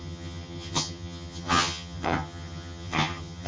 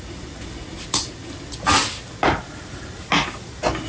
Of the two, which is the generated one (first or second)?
first